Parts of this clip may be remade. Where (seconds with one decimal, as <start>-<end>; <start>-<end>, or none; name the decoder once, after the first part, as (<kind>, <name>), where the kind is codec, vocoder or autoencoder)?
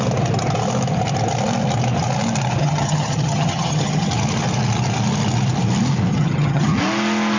2.6-4.1 (vocoder, HiFi-GAN); 6.1-6.8